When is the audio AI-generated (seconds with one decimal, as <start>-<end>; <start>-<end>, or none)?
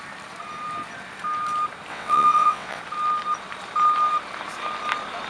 1.9-2.8